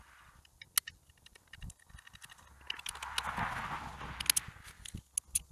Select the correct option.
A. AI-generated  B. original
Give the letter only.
B